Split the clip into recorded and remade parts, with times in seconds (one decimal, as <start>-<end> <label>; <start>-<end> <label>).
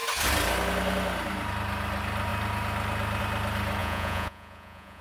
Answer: 0.0-3.8 recorded; 3.8-5.0 remade